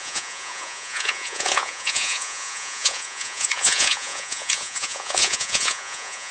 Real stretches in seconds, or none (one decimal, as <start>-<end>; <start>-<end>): none